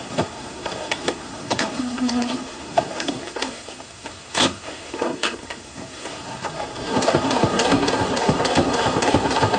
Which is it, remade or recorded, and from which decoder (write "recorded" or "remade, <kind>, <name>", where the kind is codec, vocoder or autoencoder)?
remade, codec, SNAC